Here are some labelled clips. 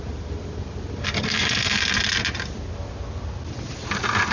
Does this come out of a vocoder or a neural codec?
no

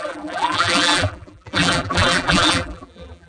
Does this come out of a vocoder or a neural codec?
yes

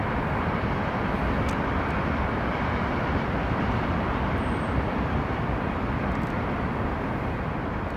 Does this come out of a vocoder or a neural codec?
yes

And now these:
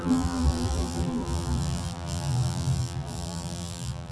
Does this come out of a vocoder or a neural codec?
yes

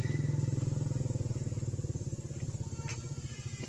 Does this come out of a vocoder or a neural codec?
no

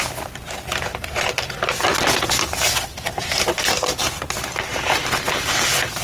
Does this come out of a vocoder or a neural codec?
no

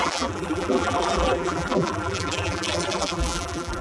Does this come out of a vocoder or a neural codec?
yes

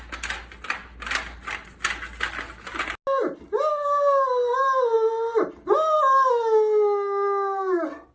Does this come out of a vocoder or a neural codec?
no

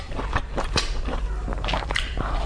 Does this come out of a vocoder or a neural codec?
yes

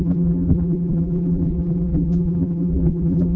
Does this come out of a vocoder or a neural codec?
yes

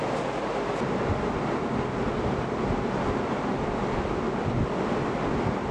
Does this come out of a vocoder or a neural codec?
no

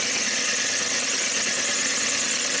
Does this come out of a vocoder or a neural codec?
no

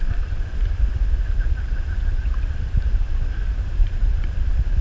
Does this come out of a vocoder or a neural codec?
yes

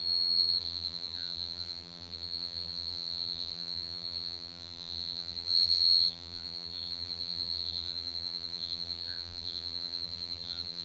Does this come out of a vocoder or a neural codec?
yes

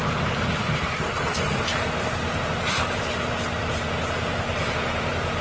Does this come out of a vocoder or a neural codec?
yes